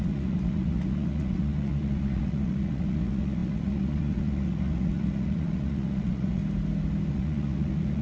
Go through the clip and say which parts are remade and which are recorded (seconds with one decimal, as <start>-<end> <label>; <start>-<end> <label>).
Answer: 0.0-6.4 remade; 6.4-7.1 recorded; 7.1-8.0 remade